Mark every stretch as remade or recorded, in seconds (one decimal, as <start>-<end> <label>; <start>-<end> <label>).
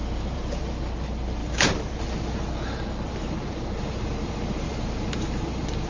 0.0-0.6 remade; 0.6-1.4 recorded; 1.4-1.9 remade; 1.9-3.1 recorded; 3.1-5.9 remade